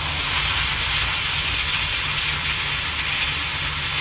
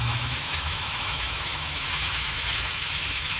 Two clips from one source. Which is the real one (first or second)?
first